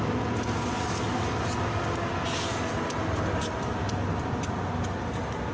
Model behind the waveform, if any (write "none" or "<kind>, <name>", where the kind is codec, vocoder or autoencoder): none